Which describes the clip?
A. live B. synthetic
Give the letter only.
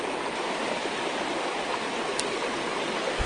A